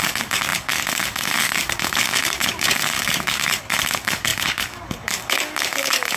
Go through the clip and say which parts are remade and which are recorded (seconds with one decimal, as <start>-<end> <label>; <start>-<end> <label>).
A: 0.0-6.2 remade